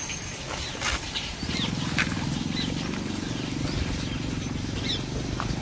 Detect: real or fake real